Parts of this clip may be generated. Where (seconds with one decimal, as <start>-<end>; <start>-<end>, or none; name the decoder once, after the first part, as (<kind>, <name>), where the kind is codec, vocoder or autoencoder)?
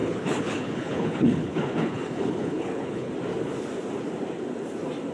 0.0-3.1 (codec, HILCodec)